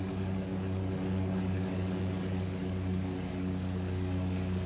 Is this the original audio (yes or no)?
no